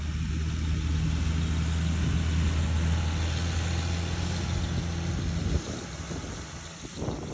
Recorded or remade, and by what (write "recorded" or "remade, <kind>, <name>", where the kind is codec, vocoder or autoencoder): recorded